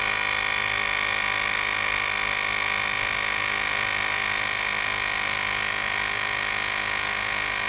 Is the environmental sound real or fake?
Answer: real